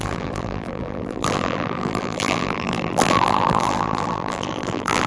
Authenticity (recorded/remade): remade